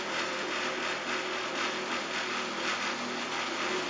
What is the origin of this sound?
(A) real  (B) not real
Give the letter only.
A